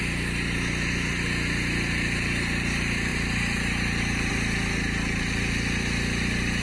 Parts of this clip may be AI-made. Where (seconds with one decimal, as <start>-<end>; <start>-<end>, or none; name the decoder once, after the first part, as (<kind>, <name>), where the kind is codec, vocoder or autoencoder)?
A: none